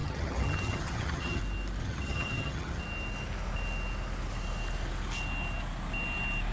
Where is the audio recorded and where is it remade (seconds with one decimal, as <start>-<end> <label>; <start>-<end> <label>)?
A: 0.0-1.4 remade; 1.4-1.8 recorded; 1.8-2.8 remade; 2.8-6.5 recorded